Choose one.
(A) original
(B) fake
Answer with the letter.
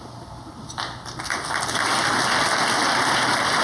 A